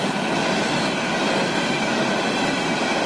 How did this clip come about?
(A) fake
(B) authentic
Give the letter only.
B